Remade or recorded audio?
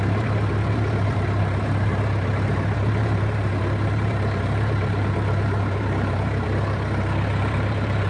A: remade